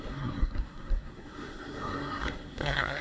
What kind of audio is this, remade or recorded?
remade